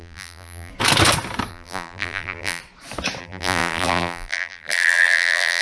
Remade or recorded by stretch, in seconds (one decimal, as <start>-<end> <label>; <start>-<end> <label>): 0.0-0.7 remade; 0.7-1.5 recorded; 1.5-2.6 remade; 2.6-3.2 recorded; 3.2-5.6 remade